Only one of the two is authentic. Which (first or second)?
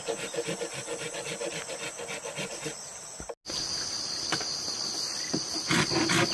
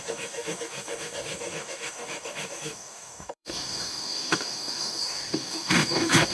first